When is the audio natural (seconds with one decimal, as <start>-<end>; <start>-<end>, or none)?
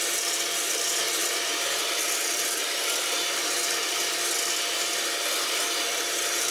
0.0-6.5